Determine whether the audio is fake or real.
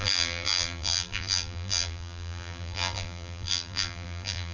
fake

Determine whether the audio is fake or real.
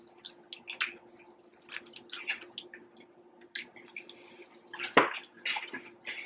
real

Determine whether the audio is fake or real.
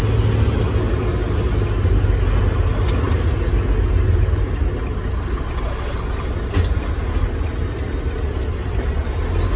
real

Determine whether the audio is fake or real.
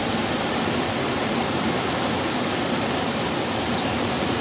fake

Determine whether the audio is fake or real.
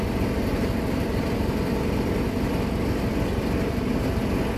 fake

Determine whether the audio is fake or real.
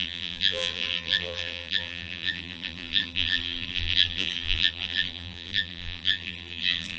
fake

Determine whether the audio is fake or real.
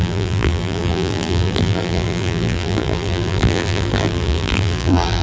fake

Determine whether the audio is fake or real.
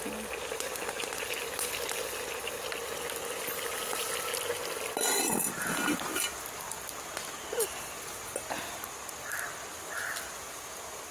real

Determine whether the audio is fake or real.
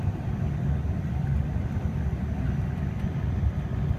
real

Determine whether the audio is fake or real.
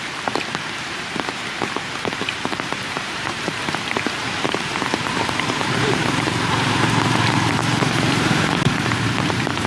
fake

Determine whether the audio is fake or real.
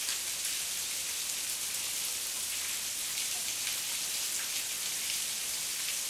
real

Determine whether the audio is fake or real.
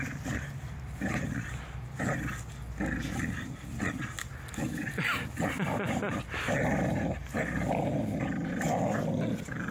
real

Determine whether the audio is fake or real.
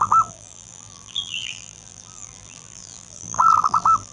fake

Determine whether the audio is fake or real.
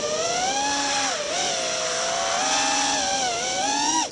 real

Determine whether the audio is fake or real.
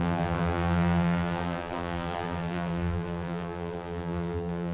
fake